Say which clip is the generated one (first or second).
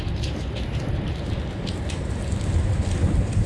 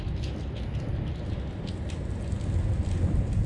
first